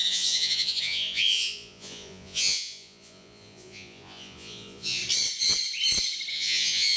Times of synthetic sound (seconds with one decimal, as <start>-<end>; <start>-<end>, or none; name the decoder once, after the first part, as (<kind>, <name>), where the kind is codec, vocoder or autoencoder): 0.0-5.0 (vocoder, Vocos); 6.3-7.0